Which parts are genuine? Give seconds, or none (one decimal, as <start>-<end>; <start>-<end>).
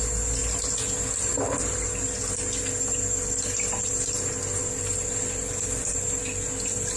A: 0.0-7.0